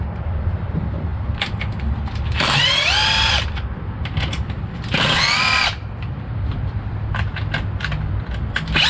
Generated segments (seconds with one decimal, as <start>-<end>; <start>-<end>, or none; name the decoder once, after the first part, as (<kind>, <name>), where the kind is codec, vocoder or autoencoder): 3.0-6.9 (vocoder, BigVGAN v2)